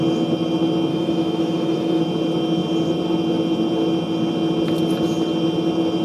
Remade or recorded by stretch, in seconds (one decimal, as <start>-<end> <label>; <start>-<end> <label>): 0.0-0.9 recorded; 0.9-2.0 remade; 2.0-6.0 recorded